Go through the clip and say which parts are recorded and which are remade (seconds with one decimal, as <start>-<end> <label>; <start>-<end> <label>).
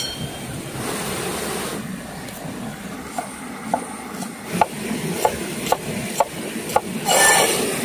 0.0-7.8 recorded